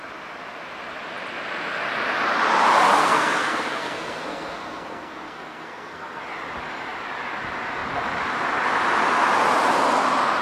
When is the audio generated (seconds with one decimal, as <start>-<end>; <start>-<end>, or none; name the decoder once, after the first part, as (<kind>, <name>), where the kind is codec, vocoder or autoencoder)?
3.0-6.2 (codec, SNAC)